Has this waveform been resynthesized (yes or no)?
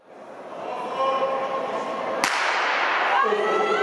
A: no